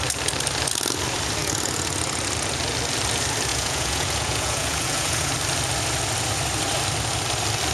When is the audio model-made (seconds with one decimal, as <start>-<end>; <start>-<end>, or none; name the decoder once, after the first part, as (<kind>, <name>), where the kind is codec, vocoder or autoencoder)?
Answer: 3.5-5.3 (vocoder, Vocos)